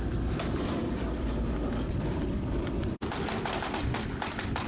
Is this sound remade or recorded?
remade